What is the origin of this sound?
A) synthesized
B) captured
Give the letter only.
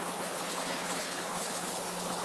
A